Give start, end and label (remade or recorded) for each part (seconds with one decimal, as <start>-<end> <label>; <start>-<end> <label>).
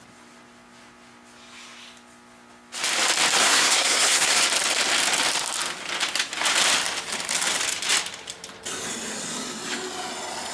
0.0-3.4 recorded; 3.4-4.4 remade; 4.4-10.5 recorded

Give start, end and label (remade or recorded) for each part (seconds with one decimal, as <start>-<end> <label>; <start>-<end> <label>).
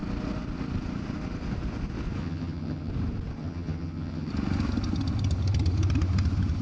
0.0-2.2 recorded; 2.2-2.9 remade; 2.9-3.4 recorded; 3.4-4.3 remade; 4.3-6.6 recorded